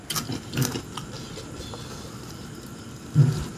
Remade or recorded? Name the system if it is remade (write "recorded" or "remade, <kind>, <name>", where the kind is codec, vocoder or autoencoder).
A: recorded